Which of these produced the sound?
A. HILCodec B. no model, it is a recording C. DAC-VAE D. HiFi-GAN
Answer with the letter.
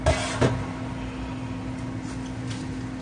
B